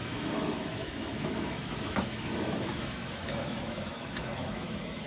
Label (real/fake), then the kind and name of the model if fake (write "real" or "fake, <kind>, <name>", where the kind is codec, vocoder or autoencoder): fake, autoencoder, DAC-VAE